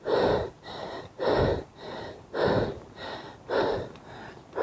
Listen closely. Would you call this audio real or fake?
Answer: real